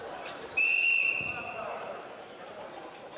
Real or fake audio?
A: fake